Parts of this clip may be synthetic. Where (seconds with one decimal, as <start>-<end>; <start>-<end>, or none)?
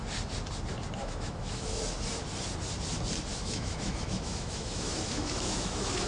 1.0-1.8; 3.3-6.1